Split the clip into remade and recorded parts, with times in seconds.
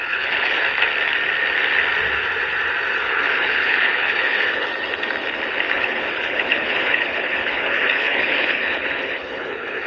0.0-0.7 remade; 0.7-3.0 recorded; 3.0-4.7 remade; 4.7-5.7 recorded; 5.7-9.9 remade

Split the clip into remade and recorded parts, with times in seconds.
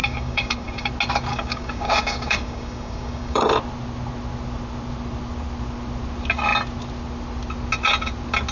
0.0-0.9 remade; 0.9-1.3 recorded; 1.3-3.5 remade; 3.5-8.5 recorded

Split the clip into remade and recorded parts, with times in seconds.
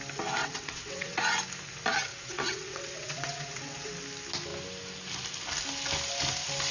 0.0-0.4 recorded; 0.4-1.2 remade; 1.2-2.1 recorded; 2.1-3.9 remade; 3.9-6.7 recorded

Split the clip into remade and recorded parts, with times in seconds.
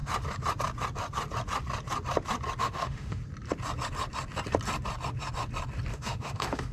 0.0-2.6 recorded; 2.6-3.2 remade; 3.2-5.9 recorded; 5.9-6.7 remade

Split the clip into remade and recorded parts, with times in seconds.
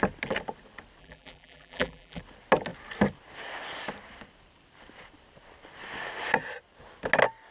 0.0-1.0 recorded; 1.0-2.2 remade; 2.2-7.5 recorded